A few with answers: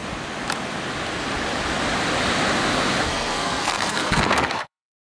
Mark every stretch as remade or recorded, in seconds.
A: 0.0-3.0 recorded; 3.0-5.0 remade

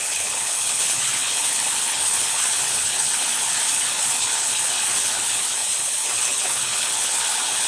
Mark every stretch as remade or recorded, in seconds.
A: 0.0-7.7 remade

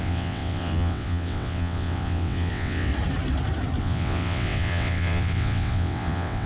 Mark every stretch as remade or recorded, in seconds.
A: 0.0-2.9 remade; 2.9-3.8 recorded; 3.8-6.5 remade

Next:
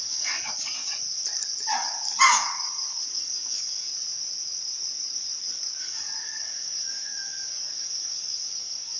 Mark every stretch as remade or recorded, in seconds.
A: 0.0-0.8 remade; 0.8-3.1 recorded; 3.1-3.9 remade; 3.9-5.8 recorded; 5.8-9.0 remade

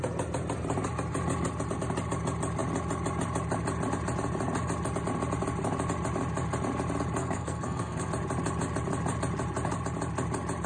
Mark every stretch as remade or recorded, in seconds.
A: 0.0-7.2 recorded; 7.2-8.1 remade; 8.1-10.7 recorded

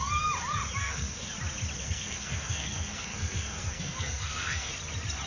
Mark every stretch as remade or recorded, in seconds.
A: 0.0-0.8 recorded; 0.8-1.3 remade; 1.3-1.8 recorded; 1.8-4.7 remade; 4.7-5.3 recorded

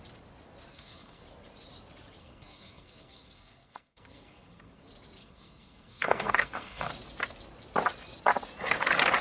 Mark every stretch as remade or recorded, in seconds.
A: 0.0-0.7 recorded; 0.7-1.2 remade; 1.2-2.2 recorded; 2.2-4.8 remade; 4.8-5.2 recorded; 5.2-6.9 remade; 6.9-9.2 recorded